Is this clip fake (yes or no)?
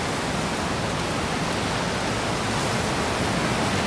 no